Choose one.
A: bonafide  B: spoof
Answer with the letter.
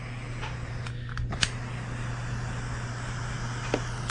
A